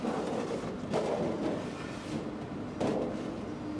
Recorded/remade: recorded